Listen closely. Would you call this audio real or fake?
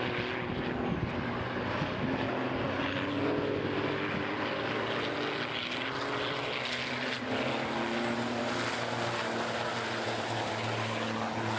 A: real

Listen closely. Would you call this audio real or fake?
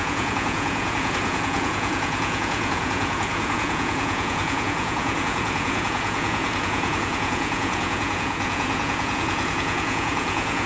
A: fake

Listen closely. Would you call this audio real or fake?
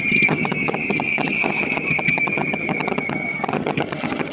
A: fake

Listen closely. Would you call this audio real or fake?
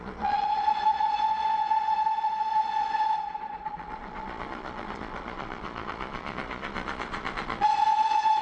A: fake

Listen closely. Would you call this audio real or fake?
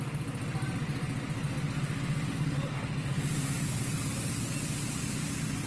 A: real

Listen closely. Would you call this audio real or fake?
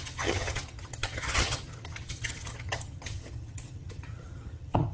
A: fake